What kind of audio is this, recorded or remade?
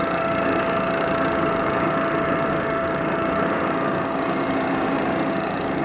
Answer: remade